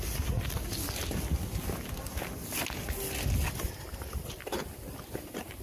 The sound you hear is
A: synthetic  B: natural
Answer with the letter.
B